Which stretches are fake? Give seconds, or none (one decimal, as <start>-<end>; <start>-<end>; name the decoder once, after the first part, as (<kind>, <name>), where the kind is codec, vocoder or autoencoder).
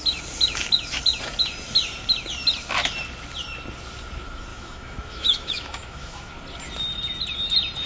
4.5-6.3 (autoencoder, DAC-VAE)